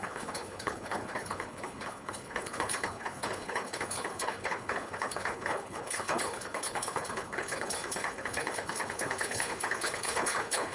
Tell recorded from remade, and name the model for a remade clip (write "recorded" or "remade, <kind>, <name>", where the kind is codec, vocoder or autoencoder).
remade, codec, HILCodec